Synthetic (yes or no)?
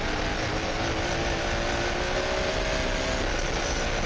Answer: no